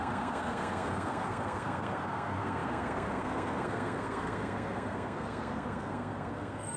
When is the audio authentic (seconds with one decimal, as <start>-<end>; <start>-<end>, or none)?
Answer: none